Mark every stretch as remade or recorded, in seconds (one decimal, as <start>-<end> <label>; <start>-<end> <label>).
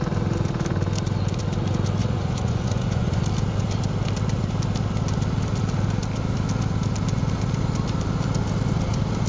0.0-2.0 recorded; 2.0-3.2 remade; 3.2-9.3 recorded